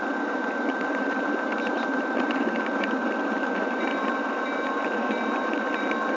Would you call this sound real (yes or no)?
no